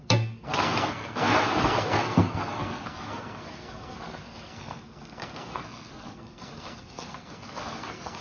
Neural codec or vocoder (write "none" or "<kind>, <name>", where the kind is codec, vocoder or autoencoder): codec, SNAC